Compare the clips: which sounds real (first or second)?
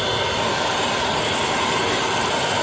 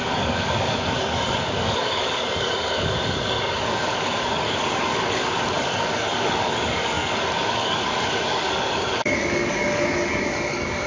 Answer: first